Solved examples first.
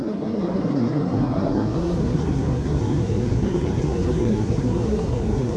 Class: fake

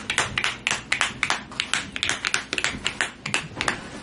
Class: real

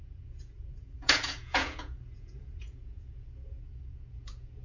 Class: fake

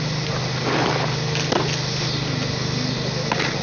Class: real